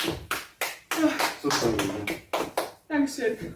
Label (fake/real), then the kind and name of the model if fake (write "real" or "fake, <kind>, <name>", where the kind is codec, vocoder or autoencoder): real